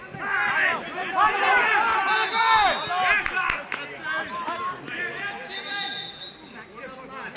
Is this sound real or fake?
real